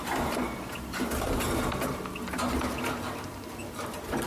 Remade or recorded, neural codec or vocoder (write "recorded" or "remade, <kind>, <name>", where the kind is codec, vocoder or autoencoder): recorded